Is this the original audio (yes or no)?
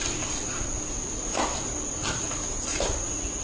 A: yes